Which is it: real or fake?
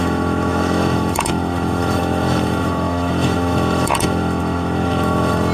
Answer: fake